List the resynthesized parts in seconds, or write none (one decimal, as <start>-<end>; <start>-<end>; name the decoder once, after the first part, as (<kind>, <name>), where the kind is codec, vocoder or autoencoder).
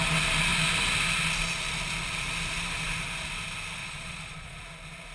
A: 3.8-4.6 (vocoder, Vocos)